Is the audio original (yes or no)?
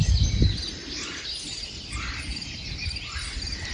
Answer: yes